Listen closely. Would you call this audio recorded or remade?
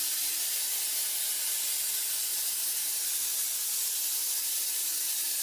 recorded